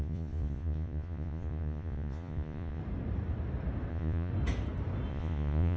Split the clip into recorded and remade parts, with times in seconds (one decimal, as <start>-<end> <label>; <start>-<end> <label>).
0.0-2.8 remade; 2.8-3.9 recorded; 3.9-4.3 remade; 4.3-5.1 recorded; 5.1-5.8 remade

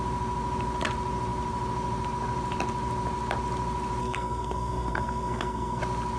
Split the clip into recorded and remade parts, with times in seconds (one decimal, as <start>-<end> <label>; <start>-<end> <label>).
0.0-4.0 recorded; 4.0-5.8 remade; 5.8-6.2 recorded

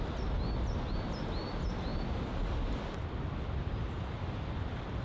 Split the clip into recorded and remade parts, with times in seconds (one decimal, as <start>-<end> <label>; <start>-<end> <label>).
0.0-5.0 recorded

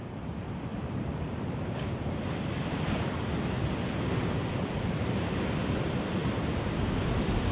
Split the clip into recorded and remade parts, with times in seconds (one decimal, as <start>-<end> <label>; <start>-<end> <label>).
0.0-6.2 remade; 6.2-6.8 recorded; 6.8-7.5 remade

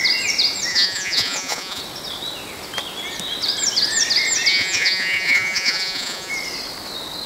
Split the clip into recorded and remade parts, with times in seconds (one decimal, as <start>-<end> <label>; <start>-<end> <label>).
0.0-0.7 recorded; 0.7-1.8 remade; 1.8-4.5 recorded; 4.5-6.3 remade; 6.3-7.3 recorded